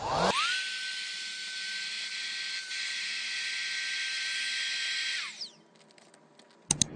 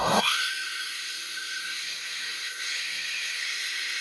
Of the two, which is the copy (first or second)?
second